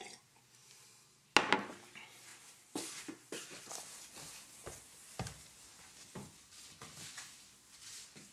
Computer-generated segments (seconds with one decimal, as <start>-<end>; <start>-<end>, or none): none